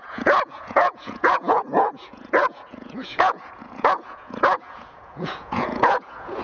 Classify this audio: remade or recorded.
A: remade